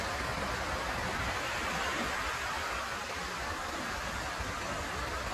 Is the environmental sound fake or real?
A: real